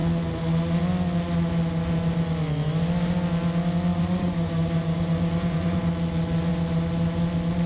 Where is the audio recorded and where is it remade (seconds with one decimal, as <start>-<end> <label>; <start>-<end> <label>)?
0.0-3.9 recorded; 3.9-5.8 remade; 5.8-7.7 recorded